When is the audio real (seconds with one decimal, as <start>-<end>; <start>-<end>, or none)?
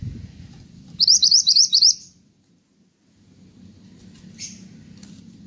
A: 2.2-5.5